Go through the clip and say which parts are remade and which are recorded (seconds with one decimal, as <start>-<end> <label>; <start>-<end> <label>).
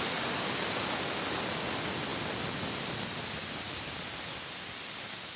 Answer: 0.0-5.4 recorded